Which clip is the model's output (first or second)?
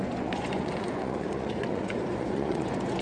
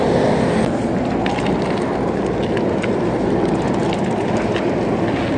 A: first